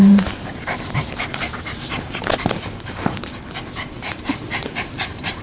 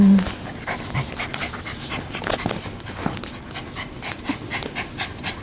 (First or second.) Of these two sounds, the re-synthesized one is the first